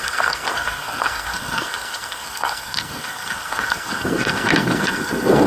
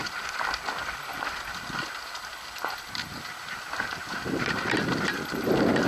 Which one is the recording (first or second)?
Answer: second